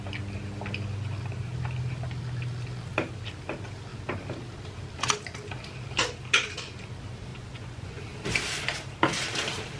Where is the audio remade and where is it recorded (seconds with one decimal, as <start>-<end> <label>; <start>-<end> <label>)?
0.0-7.3 recorded; 7.3-8.0 remade; 8.0-9.8 recorded